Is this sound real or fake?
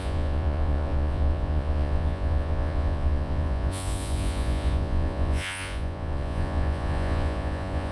fake